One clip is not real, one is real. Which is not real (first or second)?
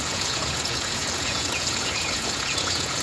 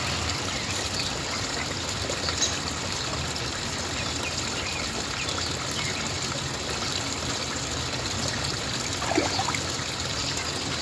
first